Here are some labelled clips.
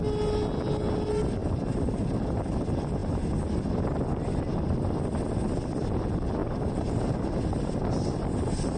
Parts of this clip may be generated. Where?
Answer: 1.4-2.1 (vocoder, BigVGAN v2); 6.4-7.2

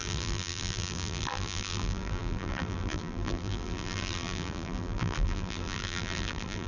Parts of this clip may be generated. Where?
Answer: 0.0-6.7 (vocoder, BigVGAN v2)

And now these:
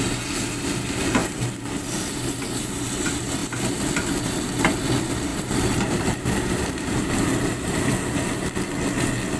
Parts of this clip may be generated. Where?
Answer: 5.3-8.5 (vocoder, BigVGAN v2)

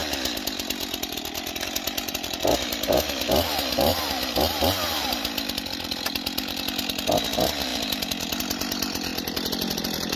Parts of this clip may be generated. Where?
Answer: 2.1-3.9 (vocoder, BigVGAN v2); 5.1-7.7; 8.4-9.1

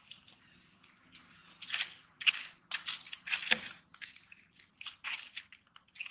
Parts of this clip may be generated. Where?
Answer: none